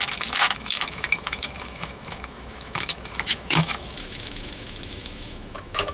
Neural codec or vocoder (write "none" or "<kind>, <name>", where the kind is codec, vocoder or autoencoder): autoencoder, DAC-VAE